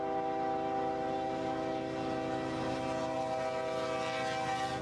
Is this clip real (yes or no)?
yes